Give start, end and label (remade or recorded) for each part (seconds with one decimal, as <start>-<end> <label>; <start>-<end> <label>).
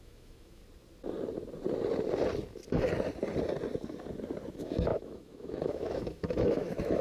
0.0-0.6 remade; 0.6-4.5 recorded; 4.5-7.0 remade